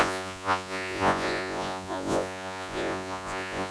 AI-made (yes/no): yes